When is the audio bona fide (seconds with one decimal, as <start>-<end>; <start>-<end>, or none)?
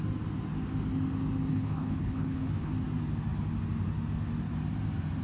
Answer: 0.0-1.5; 2.7-5.2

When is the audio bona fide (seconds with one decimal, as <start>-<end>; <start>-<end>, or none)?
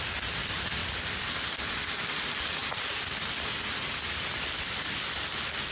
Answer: 0.0-5.7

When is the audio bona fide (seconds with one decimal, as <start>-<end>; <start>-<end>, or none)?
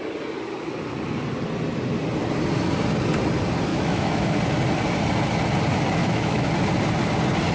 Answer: 0.0-3.7; 4.4-6.0; 6.5-7.5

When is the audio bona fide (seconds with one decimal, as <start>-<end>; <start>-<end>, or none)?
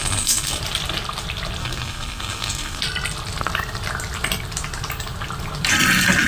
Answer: 0.6-1.6; 2.8-6.3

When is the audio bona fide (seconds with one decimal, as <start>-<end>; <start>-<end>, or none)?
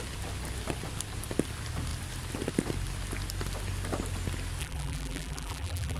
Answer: 0.0-4.6